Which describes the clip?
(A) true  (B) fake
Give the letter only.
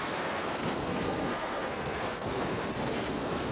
B